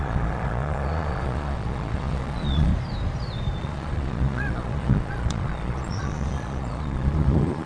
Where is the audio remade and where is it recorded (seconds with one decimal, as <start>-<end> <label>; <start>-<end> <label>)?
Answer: 0.0-2.7 remade; 2.7-3.6 recorded; 3.6-7.7 remade